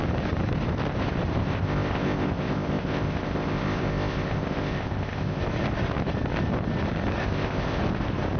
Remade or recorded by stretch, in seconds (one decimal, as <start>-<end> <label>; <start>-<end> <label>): 0.0-1.4 recorded; 1.4-5.4 remade; 5.4-7.2 recorded; 7.2-7.8 remade; 7.8-8.4 recorded